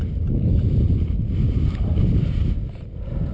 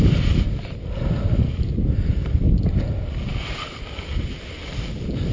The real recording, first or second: first